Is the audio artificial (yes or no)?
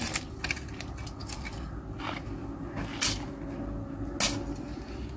no